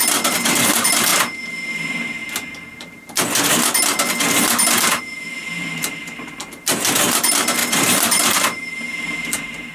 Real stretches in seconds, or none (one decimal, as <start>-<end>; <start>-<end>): 1.1-1.7; 2.2-5.0